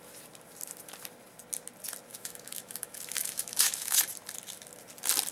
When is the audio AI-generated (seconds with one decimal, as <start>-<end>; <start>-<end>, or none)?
2.1-4.0